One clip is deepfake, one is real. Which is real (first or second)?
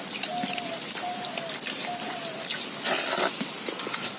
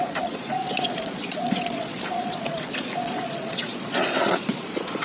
first